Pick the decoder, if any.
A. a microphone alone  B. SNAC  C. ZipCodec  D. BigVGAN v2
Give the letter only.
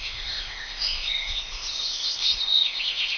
C